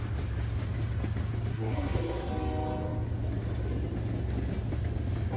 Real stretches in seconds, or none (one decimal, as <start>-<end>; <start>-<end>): 0.0-1.5; 2.3-5.4